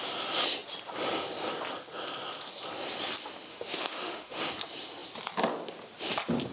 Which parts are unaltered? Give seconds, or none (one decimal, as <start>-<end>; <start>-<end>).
0.0-3.5; 4.4-6.5